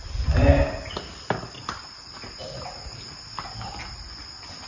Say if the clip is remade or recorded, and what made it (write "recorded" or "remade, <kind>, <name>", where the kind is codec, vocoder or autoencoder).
recorded